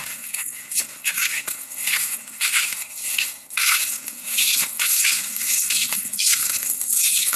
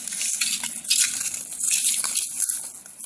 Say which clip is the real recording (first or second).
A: second